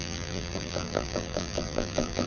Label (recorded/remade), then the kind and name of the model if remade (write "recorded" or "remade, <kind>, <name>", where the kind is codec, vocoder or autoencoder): remade, vocoder, BigVGAN v2